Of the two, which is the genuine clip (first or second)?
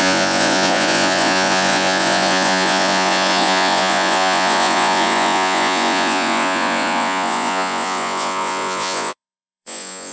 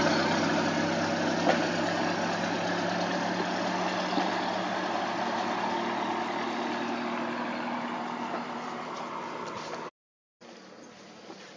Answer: second